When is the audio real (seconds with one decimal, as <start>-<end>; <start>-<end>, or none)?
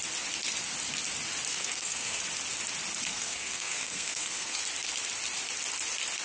0.0-1.5; 2.2-3.1; 4.6-6.2